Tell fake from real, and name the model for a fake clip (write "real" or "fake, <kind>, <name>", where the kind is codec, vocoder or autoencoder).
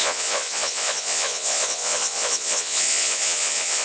fake, vocoder, Vocos